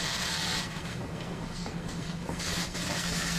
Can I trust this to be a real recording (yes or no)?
no